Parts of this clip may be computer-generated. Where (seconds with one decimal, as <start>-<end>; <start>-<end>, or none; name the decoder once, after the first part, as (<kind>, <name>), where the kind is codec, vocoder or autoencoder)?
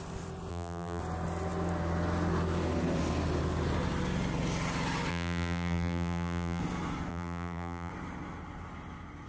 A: 0.5-1.0 (vocoder, BigVGAN v2); 5.1-6.6; 7.1-7.9